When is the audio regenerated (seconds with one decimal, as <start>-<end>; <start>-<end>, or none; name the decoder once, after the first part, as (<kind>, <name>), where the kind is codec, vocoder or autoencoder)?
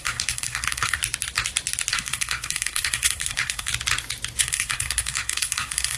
0.0-1.0 (codec, SNAC); 1.9-3.7; 4.4-6.0